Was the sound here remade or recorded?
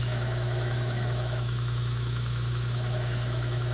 remade